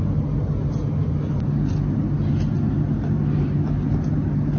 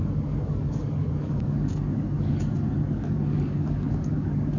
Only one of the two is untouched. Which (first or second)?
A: first